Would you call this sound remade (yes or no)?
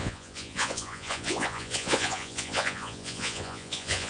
yes